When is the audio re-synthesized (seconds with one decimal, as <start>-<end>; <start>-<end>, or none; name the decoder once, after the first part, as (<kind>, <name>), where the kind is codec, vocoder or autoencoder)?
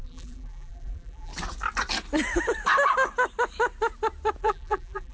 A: 0.0-1.3 (vocoder, BigVGAN v2); 4.4-5.1